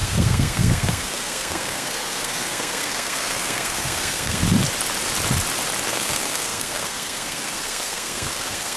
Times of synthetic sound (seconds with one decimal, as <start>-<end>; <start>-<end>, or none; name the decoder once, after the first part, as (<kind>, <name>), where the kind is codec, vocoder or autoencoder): 0.0-4.4 (codec, SNAC); 5.9-8.8